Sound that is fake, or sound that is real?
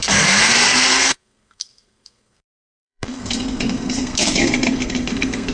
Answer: fake